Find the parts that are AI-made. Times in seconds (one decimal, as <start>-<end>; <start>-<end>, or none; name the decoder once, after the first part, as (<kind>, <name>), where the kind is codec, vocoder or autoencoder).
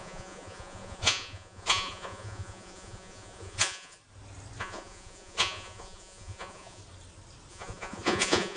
0.0-4.0 (vocoder, Vocos); 4.6-6.8; 7.5-8.6